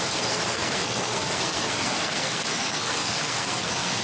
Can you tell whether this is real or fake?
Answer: fake